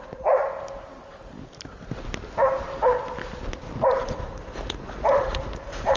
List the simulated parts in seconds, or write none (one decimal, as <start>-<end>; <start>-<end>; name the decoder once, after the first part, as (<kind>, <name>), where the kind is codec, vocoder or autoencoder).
0.0-0.4 (vocoder, Vocos); 4.0-6.0